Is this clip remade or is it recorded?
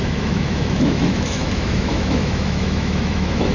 remade